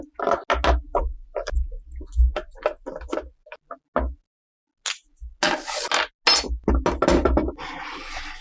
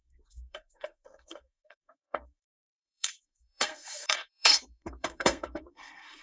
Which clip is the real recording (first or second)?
first